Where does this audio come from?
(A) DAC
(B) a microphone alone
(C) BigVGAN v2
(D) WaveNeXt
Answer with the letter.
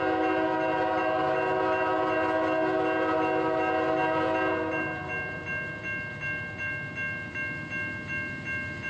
B